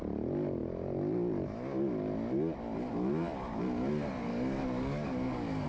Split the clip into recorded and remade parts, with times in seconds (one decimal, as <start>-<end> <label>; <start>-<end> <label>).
0.0-4.3 recorded; 4.3-5.7 remade

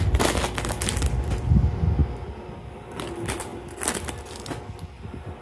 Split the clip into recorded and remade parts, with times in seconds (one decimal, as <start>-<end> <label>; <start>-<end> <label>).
0.0-5.4 recorded

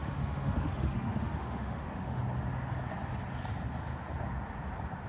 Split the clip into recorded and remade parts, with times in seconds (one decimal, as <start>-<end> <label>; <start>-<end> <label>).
0.0-2.2 remade; 2.2-5.1 recorded

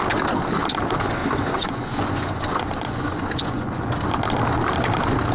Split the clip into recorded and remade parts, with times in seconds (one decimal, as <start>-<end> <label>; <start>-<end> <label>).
0.0-1.2 recorded; 1.2-3.8 remade; 3.8-5.3 recorded

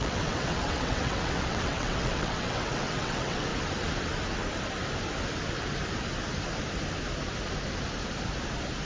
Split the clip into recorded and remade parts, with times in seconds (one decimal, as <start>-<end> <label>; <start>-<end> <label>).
0.0-3.5 remade; 3.5-8.9 recorded